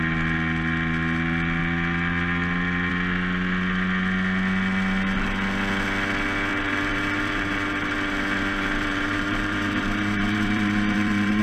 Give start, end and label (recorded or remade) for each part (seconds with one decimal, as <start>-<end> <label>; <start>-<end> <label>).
0.0-6.5 recorded; 6.5-11.4 remade